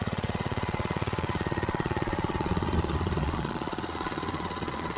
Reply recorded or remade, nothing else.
remade